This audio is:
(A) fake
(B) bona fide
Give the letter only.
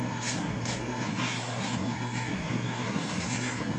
A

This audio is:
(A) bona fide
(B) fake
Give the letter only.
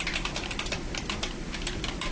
B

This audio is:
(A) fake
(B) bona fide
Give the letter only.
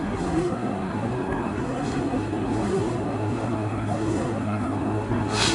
A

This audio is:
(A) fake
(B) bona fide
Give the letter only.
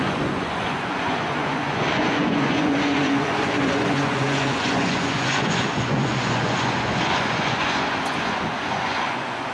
A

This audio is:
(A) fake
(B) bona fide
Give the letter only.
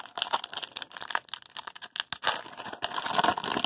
B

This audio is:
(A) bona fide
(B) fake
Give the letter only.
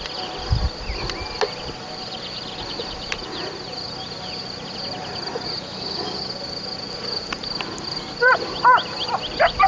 A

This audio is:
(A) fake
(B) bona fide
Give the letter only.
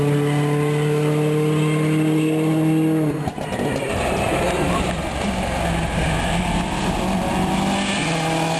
B